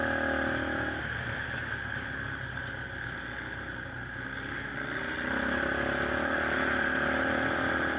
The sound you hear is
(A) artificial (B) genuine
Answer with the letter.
B